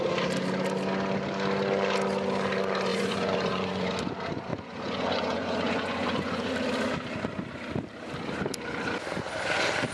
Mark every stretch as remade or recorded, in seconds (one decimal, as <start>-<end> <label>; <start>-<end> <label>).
0.0-2.9 recorded; 2.9-3.9 remade; 3.9-4.5 recorded; 4.5-6.5 remade; 6.5-9.9 recorded